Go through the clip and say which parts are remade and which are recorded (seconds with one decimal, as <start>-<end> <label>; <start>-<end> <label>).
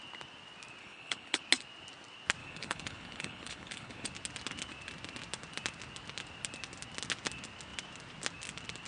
0.0-0.8 recorded; 0.8-1.4 remade; 1.4-2.4 recorded; 2.4-4.1 remade; 4.1-8.9 recorded